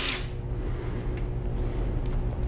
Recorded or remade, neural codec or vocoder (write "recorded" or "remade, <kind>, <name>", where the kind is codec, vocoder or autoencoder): recorded